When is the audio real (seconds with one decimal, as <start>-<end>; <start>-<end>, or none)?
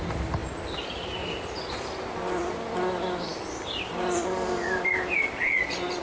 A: 0.4-2.5